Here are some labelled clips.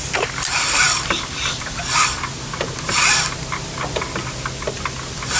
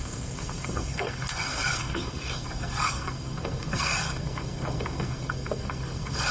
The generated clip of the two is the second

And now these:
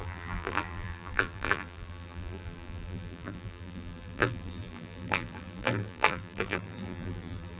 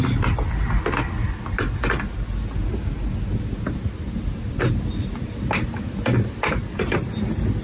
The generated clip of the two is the first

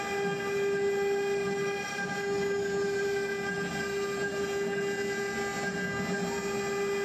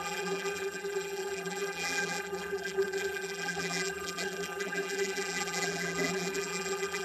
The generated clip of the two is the second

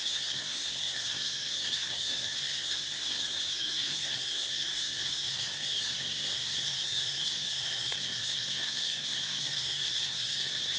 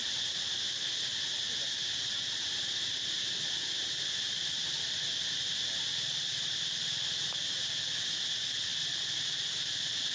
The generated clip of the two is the first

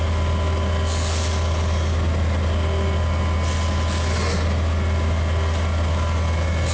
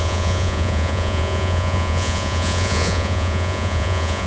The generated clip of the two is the second